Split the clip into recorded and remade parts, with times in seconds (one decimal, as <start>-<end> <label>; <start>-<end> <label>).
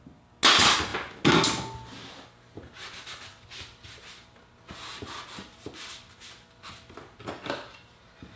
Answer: 0.0-8.4 recorded